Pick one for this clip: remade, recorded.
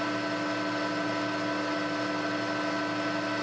recorded